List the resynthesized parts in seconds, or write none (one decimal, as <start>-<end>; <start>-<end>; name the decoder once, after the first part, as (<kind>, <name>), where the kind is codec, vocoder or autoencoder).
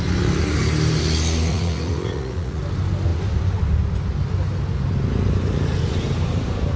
1.5-2.6 (vocoder, Vocos)